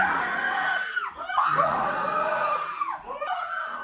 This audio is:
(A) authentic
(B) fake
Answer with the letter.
B